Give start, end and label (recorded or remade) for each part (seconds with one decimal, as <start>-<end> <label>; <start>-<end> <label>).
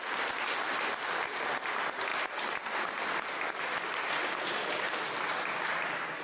0.0-6.2 recorded